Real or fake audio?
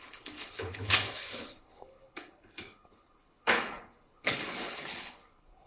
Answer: fake